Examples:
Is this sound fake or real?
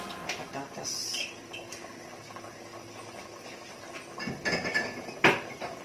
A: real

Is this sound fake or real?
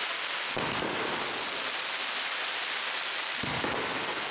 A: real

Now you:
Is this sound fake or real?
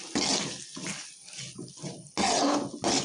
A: real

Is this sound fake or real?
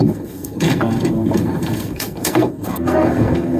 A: fake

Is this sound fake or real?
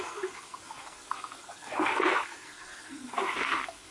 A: fake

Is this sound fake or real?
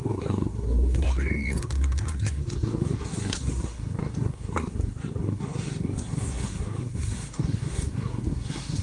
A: fake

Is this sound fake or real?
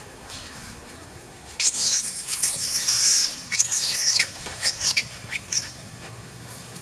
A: fake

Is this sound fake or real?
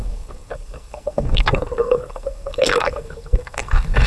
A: fake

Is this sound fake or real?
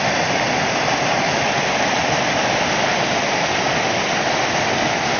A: real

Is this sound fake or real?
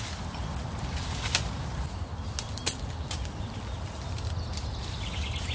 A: real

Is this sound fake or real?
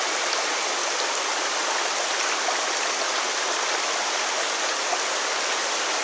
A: real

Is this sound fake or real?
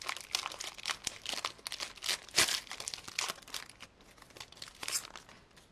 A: real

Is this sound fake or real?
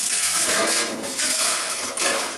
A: fake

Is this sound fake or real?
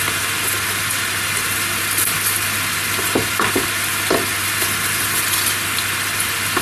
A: real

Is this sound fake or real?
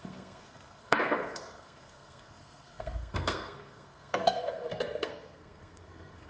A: fake